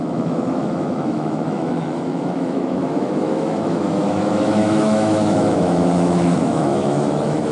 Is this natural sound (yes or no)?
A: no